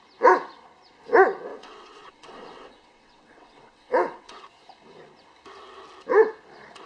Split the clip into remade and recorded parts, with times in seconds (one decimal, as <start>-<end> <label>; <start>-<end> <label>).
0.0-1.5 recorded; 1.5-4.4 remade; 4.4-6.9 recorded